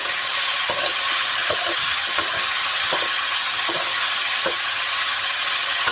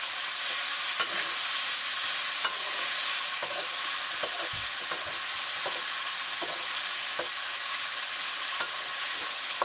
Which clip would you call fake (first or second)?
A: first